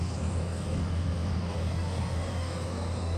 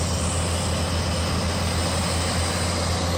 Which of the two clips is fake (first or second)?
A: first